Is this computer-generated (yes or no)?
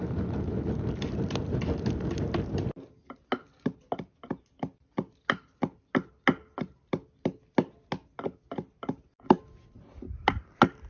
no